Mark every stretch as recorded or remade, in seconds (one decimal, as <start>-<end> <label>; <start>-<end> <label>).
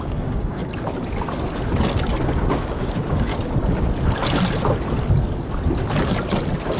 0.0-0.6 remade; 0.6-2.5 recorded; 2.5-3.3 remade; 3.3-6.8 recorded